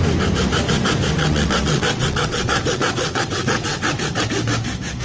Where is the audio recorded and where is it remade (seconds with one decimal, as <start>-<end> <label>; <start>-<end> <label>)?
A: 0.0-1.2 recorded; 1.2-4.2 remade; 4.2-5.0 recorded